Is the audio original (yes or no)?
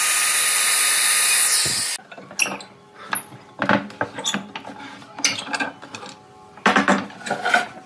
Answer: yes